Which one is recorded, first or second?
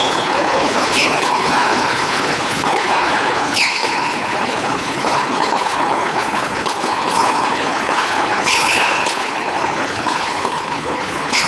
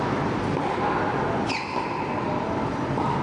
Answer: second